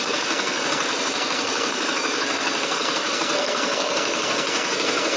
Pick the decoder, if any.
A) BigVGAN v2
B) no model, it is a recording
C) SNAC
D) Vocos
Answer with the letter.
C